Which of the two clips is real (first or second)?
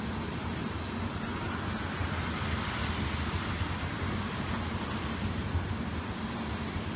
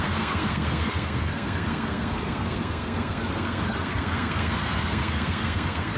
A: first